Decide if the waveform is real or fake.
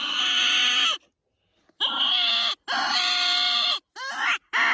real